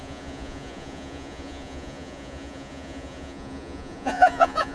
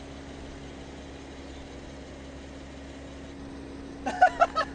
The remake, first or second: first